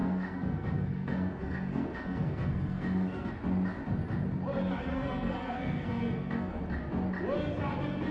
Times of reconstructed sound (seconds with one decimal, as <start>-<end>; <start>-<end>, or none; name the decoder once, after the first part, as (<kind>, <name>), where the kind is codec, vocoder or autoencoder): 0.0-3.3 (codec, SNAC); 4.9-6.6